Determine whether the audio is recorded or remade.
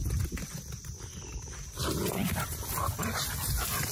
recorded